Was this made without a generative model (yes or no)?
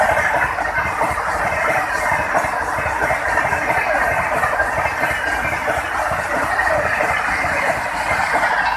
yes